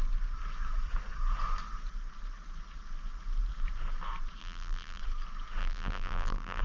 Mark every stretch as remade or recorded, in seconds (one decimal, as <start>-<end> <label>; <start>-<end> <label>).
0.0-4.4 recorded; 4.4-5.0 remade; 5.0-5.6 recorded; 5.6-6.6 remade